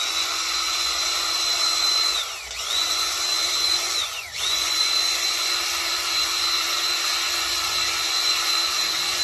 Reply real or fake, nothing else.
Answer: fake